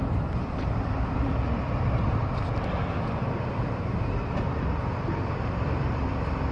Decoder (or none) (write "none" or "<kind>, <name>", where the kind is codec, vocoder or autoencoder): vocoder, BigVGAN v2